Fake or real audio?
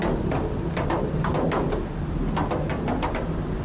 real